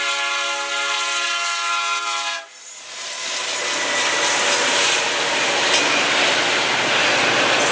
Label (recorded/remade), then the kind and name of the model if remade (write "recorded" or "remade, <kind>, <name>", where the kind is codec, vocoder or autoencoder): recorded